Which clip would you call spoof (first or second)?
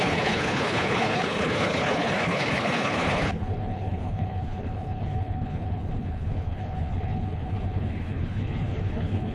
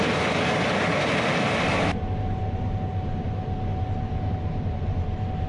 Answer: first